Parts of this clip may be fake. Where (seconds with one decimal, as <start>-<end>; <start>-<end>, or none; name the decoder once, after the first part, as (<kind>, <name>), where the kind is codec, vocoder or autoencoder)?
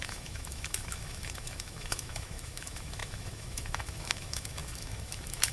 0.0-5.5 (autoencoder, DAC-VAE)